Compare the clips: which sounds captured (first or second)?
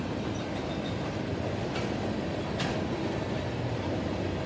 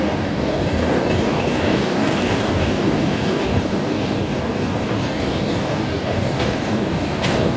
first